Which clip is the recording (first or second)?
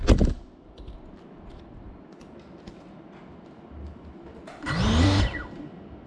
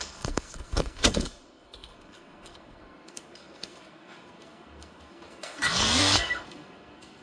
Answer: first